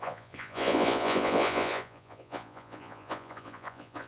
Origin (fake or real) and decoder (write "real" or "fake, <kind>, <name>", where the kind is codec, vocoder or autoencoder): fake, vocoder, Vocos